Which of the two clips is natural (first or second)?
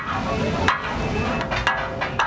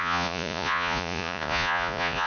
first